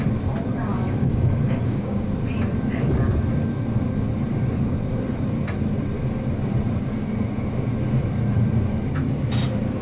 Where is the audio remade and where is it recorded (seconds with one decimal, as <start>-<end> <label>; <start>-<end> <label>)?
0.0-0.7 recorded; 0.7-2.1 remade; 2.1-9.8 recorded